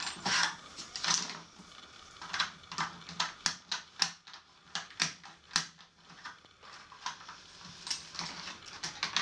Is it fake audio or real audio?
real